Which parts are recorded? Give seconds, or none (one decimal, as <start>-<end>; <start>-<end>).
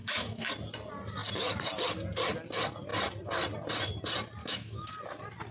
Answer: 0.5-4.4; 4.9-5.5